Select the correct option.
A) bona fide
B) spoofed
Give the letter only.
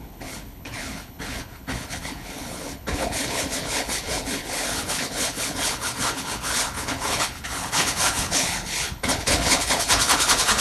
B